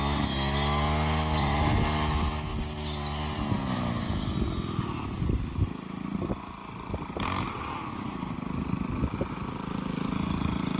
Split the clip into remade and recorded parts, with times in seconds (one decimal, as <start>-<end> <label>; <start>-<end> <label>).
0.0-10.8 recorded